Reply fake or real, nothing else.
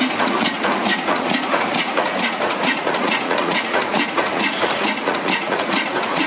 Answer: fake